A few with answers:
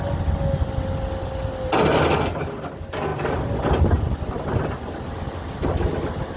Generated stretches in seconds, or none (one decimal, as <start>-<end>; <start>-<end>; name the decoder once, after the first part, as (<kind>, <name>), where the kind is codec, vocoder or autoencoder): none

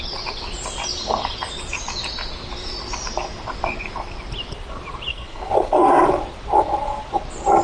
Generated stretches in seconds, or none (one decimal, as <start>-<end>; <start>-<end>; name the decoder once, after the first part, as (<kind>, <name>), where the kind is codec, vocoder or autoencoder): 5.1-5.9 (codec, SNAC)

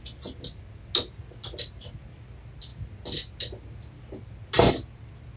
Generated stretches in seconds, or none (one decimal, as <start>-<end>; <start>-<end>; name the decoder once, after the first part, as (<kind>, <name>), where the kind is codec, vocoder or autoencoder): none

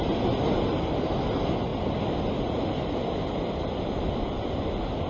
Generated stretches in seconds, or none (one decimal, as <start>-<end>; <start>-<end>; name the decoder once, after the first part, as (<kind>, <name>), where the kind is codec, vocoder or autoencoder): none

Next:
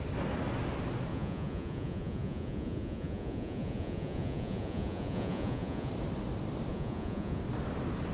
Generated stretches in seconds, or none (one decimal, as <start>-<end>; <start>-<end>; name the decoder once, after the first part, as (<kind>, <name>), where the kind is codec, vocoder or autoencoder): 1.1-5.9 (vocoder, Vocos); 6.7-7.4